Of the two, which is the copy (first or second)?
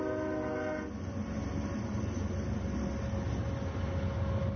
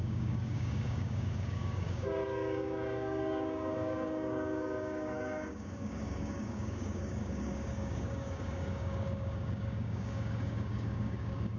second